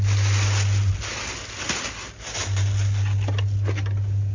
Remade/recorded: recorded